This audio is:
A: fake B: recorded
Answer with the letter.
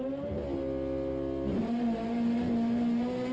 B